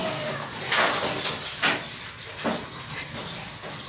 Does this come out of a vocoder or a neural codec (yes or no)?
no